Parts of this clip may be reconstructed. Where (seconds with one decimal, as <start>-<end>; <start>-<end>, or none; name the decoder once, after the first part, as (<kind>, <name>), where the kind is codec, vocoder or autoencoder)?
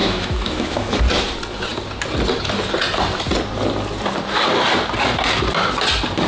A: 0.0-1.0 (autoencoder, DAC-VAE)